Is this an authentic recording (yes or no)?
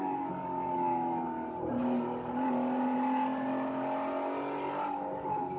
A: yes